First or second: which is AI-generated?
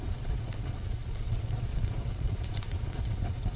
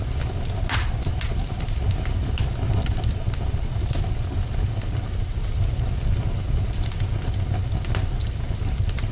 first